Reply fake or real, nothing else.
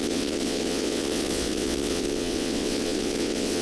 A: fake